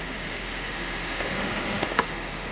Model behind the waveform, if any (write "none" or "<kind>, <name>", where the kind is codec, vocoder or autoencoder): autoencoder, DAC-VAE